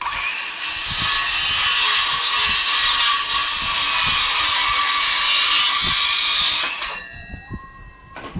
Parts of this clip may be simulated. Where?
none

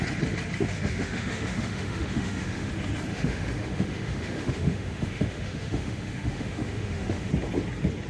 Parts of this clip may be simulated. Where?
0.7-2.7 (autoencoder, DAC-VAE); 3.1-7.3